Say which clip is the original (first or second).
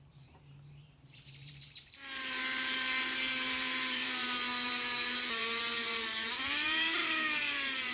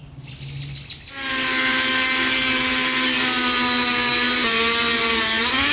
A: second